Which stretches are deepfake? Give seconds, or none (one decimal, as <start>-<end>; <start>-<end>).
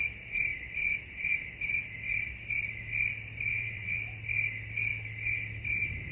3.5-4.0